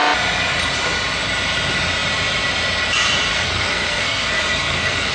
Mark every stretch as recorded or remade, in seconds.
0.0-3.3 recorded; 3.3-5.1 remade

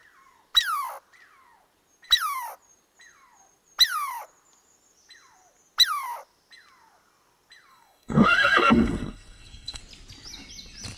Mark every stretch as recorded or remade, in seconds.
0.0-7.7 recorded; 7.7-9.8 remade; 9.8-11.0 recorded

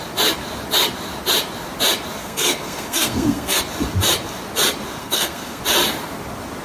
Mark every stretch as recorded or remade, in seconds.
0.0-2.2 recorded; 2.2-3.6 remade; 3.6-5.0 recorded; 5.0-5.6 remade; 5.6-6.6 recorded

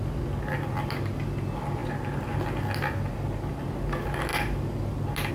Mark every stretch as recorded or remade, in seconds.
0.0-5.3 recorded

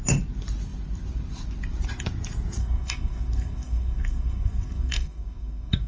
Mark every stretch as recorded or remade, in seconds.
0.0-2.6 recorded; 2.6-5.9 remade